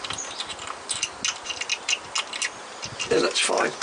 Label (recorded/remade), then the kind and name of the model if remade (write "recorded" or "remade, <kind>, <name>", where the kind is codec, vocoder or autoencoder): recorded